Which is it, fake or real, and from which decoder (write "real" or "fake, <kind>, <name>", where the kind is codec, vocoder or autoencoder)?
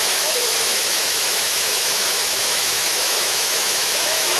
fake, autoencoder, DAC-VAE